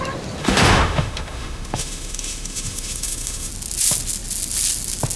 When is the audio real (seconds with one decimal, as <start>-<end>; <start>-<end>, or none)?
0.0-0.4; 3.5-5.2